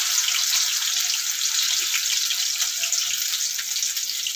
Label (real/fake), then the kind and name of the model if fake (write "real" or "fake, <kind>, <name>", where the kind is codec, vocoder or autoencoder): real